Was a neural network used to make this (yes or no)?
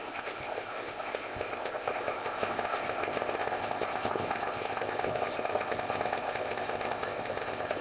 yes